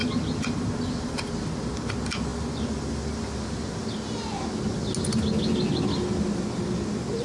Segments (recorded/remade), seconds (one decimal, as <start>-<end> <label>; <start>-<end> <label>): 0.0-7.2 recorded